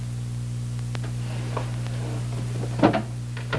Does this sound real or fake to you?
real